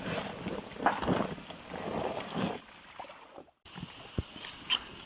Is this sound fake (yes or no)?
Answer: no